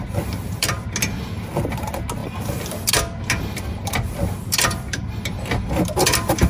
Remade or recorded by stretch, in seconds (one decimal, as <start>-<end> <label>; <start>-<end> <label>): 0.0-6.5 recorded